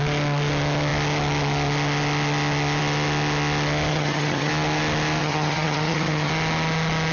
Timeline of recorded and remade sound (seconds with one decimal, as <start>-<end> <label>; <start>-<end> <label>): 0.0-3.9 recorded; 3.9-4.5 remade; 4.5-5.2 recorded; 5.2-6.3 remade; 6.3-7.1 recorded